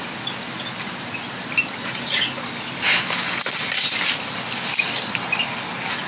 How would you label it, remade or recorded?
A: recorded